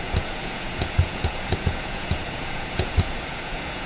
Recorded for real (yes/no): no